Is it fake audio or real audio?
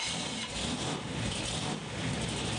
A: real